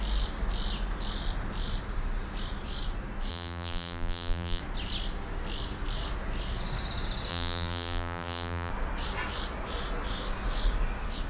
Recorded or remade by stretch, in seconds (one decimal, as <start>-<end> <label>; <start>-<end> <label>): 0.0-3.3 recorded; 3.3-4.6 remade; 4.6-7.3 recorded; 7.3-8.7 remade; 8.7-11.3 recorded